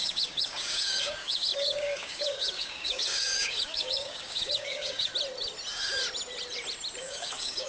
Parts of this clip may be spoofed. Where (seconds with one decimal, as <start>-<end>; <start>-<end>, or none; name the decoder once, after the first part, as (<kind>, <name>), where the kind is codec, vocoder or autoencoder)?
0.0-5.1 (codec, DAC); 7.0-7.7